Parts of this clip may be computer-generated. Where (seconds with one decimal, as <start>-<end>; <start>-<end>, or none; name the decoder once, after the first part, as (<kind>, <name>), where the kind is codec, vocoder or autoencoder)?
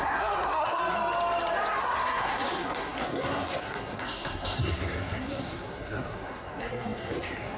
0.0-0.8 (codec, SNAC); 1.8-7.6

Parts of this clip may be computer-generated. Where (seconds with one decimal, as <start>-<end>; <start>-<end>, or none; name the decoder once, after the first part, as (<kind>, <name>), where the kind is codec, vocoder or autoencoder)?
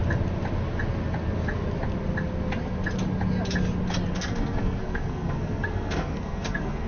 4.1-6.9 (codec, SNAC)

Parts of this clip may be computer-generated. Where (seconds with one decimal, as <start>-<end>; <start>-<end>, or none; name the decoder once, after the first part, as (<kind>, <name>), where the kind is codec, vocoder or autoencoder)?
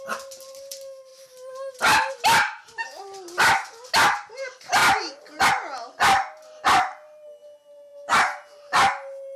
none